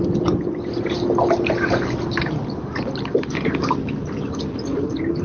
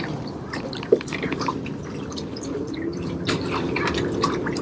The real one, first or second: first